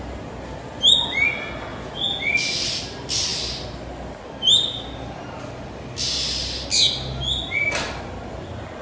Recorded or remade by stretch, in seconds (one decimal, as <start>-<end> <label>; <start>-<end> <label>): 0.0-1.7 recorded; 1.7-2.3 remade; 2.3-8.8 recorded